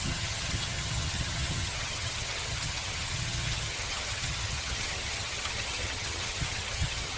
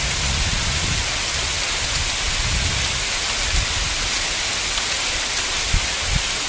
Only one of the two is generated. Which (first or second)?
first